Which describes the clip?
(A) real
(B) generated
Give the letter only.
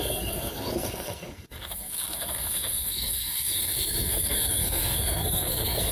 B